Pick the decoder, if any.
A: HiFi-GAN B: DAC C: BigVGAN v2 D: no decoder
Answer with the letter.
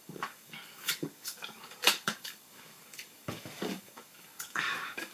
B